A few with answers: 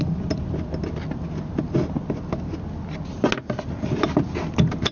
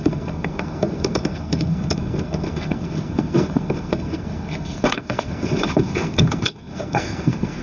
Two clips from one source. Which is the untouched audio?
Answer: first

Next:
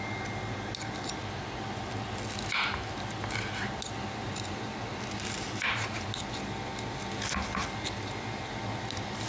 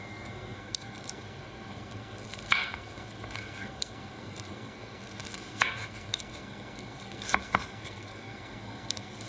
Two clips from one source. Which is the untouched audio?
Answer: first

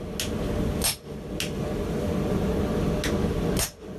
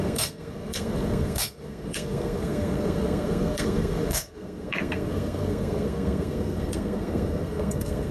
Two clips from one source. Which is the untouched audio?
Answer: first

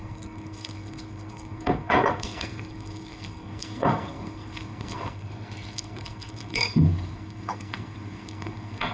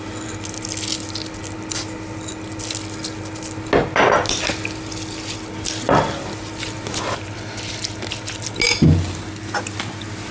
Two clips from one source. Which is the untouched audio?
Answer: second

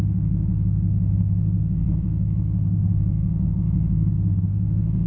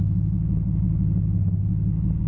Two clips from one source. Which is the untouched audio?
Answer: second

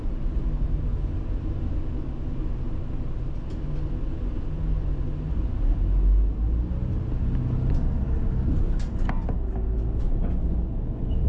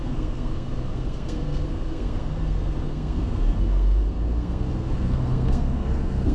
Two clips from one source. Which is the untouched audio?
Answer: first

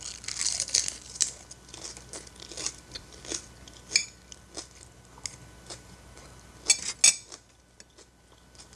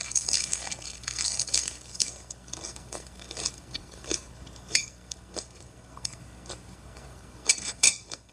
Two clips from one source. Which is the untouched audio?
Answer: first